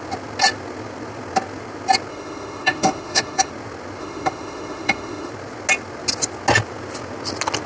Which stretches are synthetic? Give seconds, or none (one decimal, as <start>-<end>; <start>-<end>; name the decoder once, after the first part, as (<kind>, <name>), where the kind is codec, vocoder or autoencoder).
2.1-3.5 (autoencoder, DAC-VAE); 4.0-5.3